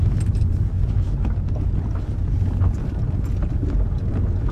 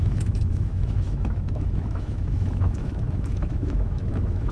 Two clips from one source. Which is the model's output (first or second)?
second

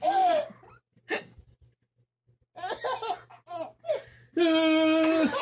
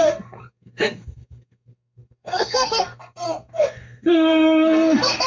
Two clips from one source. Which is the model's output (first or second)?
second